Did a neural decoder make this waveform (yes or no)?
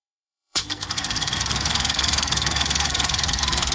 yes